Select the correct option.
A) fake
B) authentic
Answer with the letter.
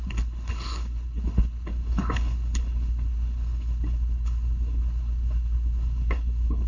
A